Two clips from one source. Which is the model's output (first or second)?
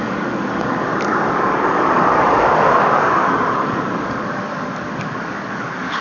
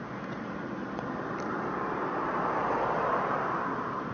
first